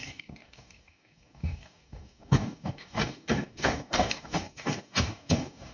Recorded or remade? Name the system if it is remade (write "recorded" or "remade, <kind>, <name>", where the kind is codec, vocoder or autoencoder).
remade, codec, DAC